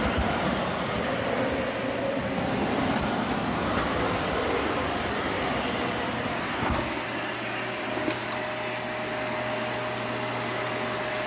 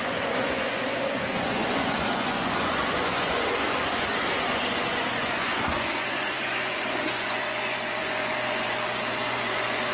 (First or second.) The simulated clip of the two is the second